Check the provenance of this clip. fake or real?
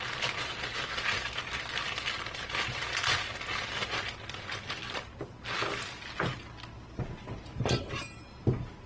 real